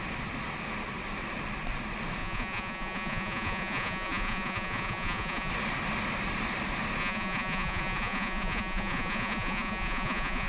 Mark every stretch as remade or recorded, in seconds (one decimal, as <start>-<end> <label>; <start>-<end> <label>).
0.0-2.2 recorded; 2.2-5.5 remade; 5.5-7.0 recorded; 7.0-10.5 remade